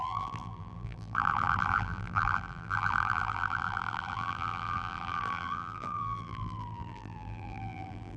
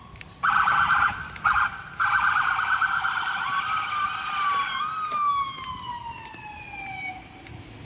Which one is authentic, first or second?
second